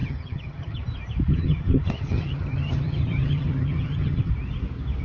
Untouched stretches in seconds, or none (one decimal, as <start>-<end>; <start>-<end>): 0.8-1.3; 4.3-5.0